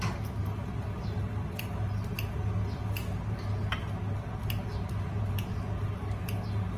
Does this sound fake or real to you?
real